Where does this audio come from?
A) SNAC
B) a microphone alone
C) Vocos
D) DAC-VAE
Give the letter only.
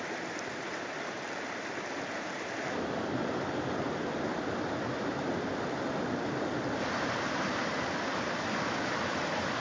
B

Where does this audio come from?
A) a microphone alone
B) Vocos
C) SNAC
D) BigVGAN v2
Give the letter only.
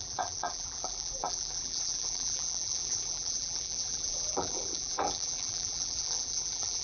D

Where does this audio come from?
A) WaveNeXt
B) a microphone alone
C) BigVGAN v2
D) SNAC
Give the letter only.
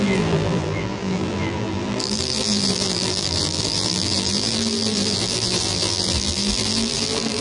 C